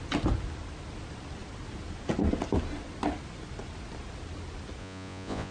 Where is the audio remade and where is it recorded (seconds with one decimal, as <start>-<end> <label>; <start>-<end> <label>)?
0.0-4.8 recorded; 4.8-5.5 remade